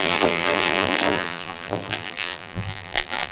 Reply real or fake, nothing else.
fake